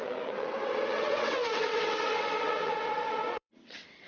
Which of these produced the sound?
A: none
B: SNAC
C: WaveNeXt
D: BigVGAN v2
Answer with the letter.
C